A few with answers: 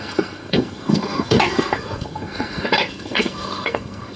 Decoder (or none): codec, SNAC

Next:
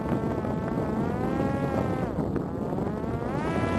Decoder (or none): none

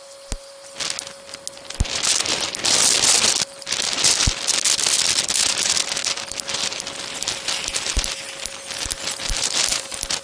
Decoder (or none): none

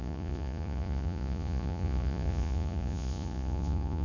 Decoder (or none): vocoder, Vocos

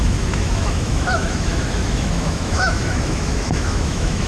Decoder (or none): autoencoder, DAC-VAE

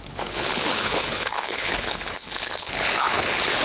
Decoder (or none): codec, HILCodec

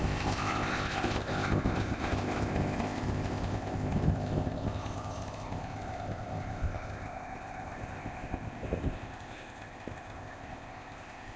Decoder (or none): codec, ZipCodec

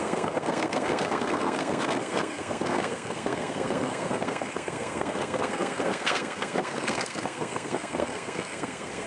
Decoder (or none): codec, SNAC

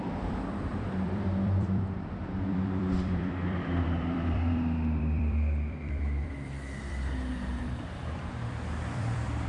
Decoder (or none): vocoder, BigVGAN v2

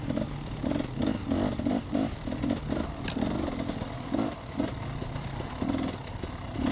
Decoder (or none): vocoder, BigVGAN v2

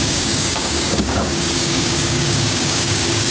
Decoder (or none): codec, DAC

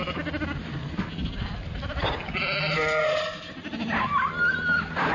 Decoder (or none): none